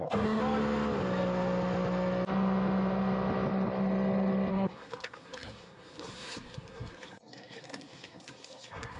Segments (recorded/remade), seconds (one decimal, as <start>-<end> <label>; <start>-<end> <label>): 0.0-0.4 remade; 0.4-4.5 recorded; 4.5-9.0 remade